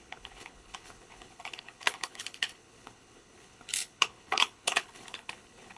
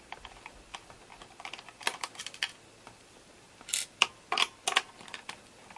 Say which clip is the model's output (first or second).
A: first